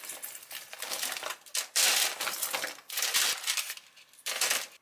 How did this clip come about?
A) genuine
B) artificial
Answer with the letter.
A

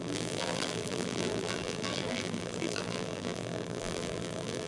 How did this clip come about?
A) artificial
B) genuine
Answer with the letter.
A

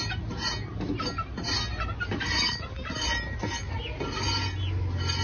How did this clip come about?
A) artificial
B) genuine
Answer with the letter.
B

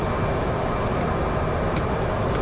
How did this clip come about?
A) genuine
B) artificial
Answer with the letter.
A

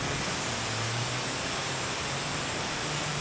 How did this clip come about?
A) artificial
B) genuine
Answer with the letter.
B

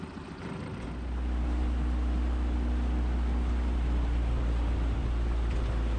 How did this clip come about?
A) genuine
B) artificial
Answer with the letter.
A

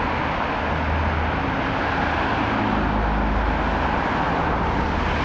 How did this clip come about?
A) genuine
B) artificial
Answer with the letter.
A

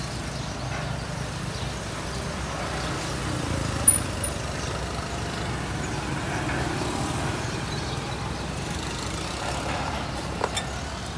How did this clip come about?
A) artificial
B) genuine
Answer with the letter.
B